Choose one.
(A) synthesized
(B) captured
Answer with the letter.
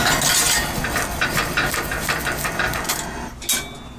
B